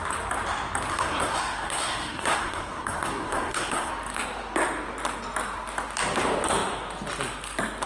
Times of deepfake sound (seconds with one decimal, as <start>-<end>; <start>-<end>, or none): 0.9-3.9